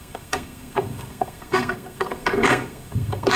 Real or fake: fake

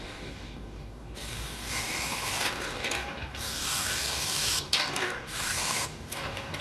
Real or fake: fake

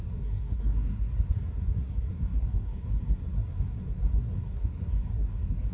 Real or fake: fake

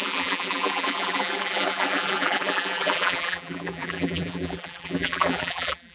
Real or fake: fake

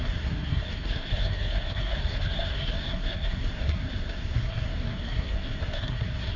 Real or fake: fake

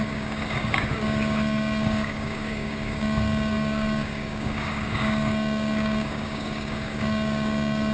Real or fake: fake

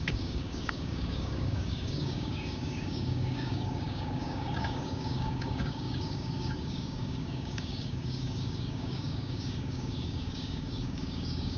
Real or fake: fake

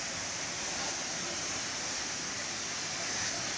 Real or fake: real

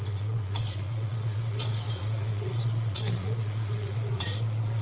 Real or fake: fake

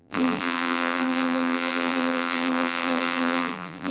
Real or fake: fake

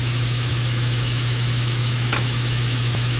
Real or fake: fake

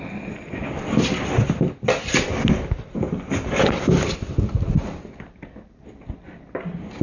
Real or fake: real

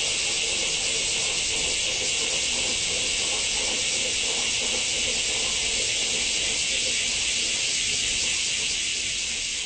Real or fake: real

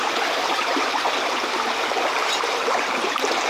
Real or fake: fake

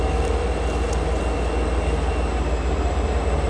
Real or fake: real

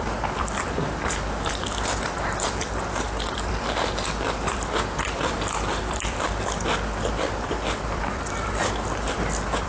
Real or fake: fake